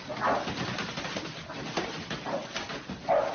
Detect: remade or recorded recorded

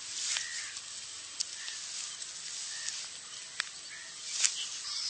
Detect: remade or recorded recorded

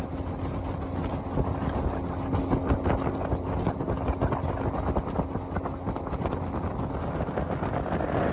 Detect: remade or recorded recorded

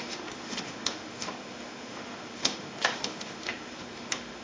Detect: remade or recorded remade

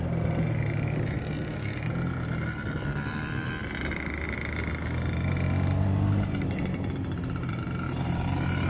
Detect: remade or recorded recorded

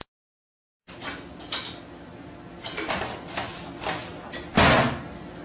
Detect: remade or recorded recorded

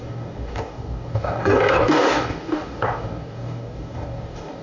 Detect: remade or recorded remade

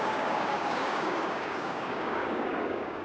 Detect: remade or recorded remade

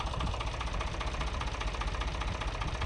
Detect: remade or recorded recorded